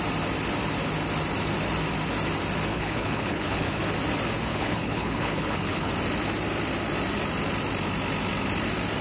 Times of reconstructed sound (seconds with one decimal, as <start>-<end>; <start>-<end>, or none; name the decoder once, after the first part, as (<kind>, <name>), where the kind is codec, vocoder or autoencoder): 2.7-3.8 (codec, HILCodec); 4.5-5.9